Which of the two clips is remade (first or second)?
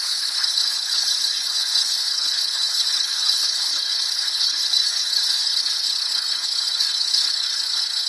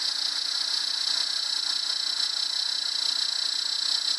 first